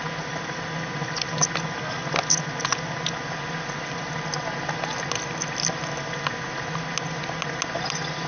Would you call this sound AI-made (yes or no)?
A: no